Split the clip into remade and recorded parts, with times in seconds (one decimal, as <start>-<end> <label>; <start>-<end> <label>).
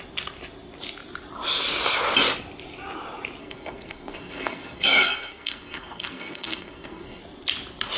0.0-3.4 recorded; 3.4-7.2 remade; 7.2-8.0 recorded